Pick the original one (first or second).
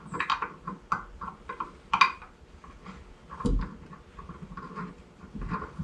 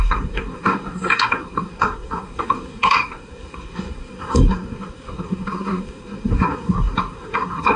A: first